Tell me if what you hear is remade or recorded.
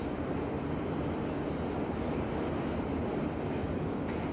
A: recorded